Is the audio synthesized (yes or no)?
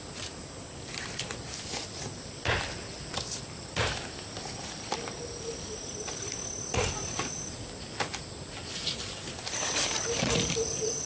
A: no